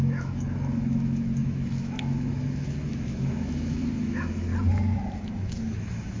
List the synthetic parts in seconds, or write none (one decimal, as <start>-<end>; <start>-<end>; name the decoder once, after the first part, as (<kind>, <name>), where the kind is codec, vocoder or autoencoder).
0.0-4.5 (autoencoder, DAC-VAE); 5.1-6.2